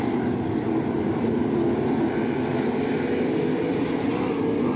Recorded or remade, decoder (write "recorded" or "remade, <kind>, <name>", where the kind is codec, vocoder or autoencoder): recorded